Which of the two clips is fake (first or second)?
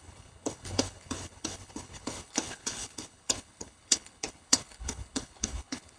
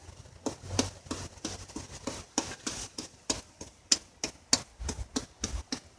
first